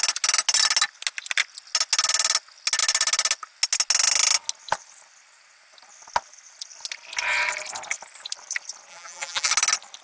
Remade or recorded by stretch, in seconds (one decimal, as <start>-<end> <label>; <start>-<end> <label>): 0.0-8.9 recorded; 8.9-9.5 remade; 9.5-10.0 recorded